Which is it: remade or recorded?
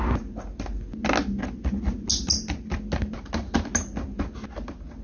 recorded